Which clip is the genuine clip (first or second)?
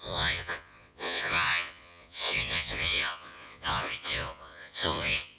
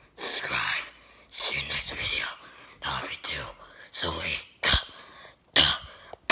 second